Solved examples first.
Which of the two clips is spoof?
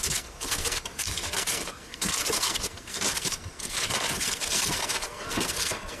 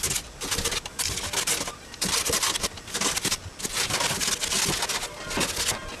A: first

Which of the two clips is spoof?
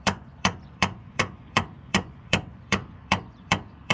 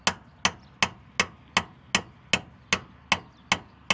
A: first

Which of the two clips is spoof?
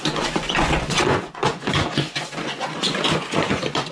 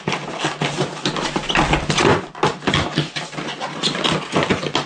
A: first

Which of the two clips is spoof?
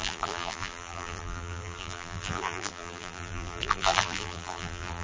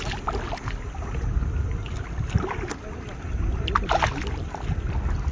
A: first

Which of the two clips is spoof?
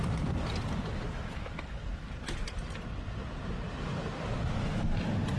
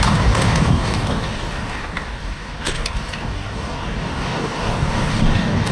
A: second